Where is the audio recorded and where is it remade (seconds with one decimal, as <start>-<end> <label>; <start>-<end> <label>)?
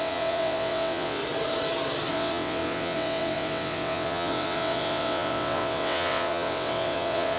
0.0-1.2 remade; 1.2-2.1 recorded; 2.1-7.4 remade